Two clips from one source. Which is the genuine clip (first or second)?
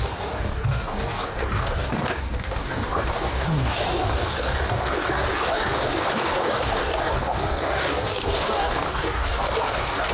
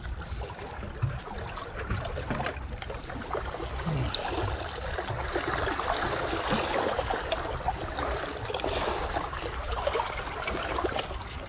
second